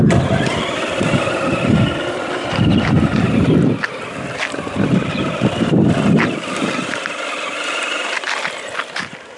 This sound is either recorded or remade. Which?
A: recorded